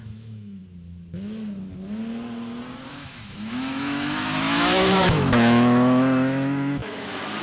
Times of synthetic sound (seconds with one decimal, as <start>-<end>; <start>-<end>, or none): 0.0-0.6; 2.9-7.4

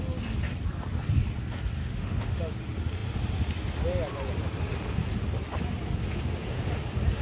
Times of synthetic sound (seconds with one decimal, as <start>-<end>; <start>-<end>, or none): 1.8-2.4

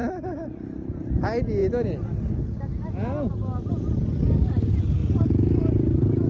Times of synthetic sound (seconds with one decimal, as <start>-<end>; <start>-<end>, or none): none

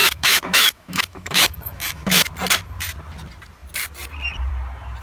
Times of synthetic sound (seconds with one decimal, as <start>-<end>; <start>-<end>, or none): 0.0-2.3

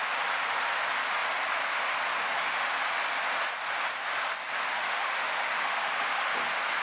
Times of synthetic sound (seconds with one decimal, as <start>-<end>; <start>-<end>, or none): 4.7-6.3